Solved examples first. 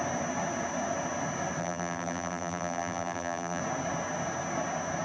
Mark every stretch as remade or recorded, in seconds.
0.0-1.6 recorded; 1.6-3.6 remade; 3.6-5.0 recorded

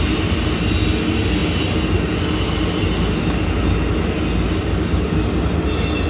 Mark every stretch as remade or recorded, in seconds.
0.0-6.1 recorded

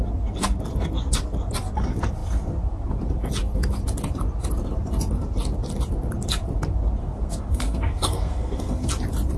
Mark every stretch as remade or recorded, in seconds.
0.0-7.0 recorded; 7.0-8.9 remade; 8.9-9.4 recorded

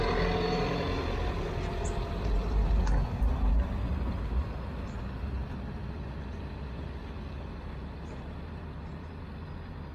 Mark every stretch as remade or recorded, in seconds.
0.0-6.5 recorded; 6.5-9.3 remade; 9.3-9.9 recorded

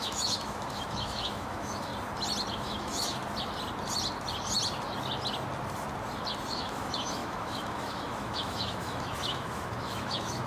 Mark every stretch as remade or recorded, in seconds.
0.0-1.9 remade; 1.9-2.5 recorded; 2.5-3.2 remade; 3.2-6.5 recorded; 6.5-10.5 remade

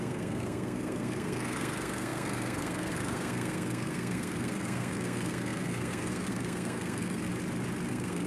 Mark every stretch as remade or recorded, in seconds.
0.0-7.3 remade; 7.3-7.9 recorded; 7.9-8.3 remade

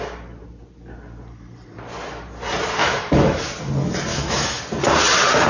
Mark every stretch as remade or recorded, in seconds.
0.0-2.8 recorded; 2.8-3.5 remade; 3.5-4.1 recorded; 4.1-4.6 remade; 4.6-5.5 recorded